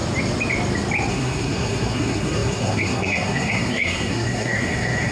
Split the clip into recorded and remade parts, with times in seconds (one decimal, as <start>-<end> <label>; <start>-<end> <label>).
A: 0.0-1.1 recorded; 1.1-5.1 remade